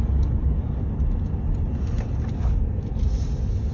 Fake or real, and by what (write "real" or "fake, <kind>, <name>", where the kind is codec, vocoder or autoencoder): real